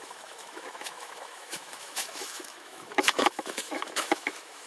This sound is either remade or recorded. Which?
remade